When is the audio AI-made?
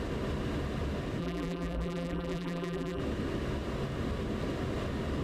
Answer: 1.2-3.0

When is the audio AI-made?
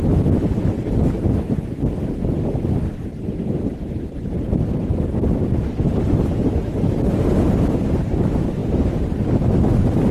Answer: none